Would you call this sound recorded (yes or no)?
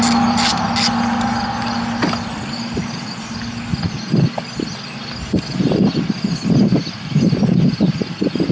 yes